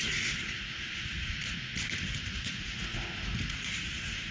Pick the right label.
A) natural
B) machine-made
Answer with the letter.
B